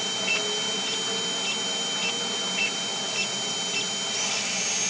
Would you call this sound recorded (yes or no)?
yes